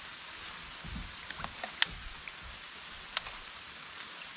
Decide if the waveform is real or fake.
real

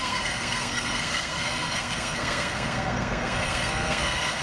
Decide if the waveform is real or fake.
fake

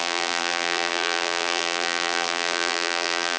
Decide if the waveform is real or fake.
fake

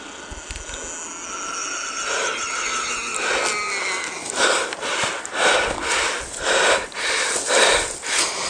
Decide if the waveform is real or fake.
real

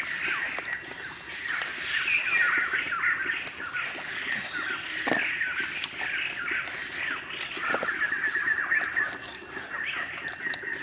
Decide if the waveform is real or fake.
real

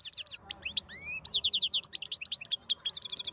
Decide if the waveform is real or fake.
real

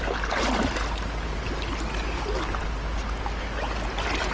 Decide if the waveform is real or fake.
real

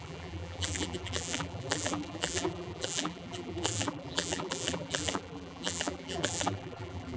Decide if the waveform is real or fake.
fake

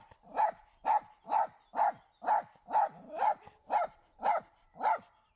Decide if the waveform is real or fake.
real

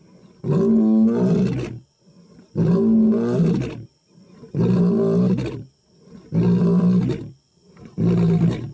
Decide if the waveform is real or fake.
real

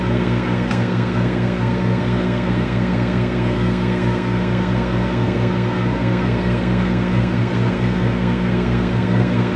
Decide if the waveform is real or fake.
fake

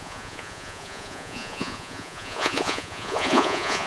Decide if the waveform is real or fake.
fake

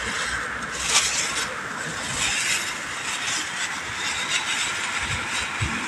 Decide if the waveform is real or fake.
real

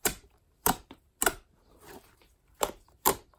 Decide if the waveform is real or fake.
fake